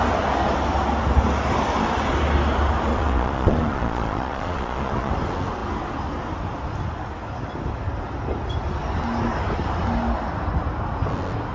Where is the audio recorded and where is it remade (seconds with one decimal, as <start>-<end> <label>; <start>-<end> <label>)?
0.0-2.9 recorded; 2.9-5.1 remade; 5.1-11.5 recorded